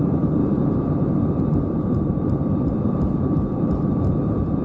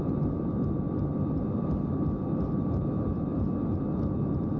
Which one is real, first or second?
second